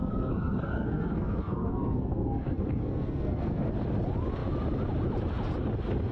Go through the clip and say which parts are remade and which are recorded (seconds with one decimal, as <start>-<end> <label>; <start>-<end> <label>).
0.0-3.7 remade; 3.7-6.1 recorded